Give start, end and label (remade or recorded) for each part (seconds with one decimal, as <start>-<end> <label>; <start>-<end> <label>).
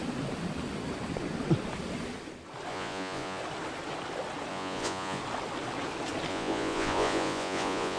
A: 0.0-2.7 recorded; 2.7-3.4 remade; 3.4-4.5 recorded; 4.5-5.2 remade; 5.2-6.3 recorded; 6.3-8.0 remade